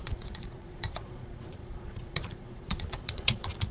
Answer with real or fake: fake